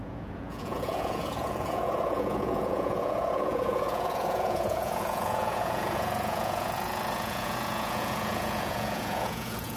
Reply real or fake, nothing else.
fake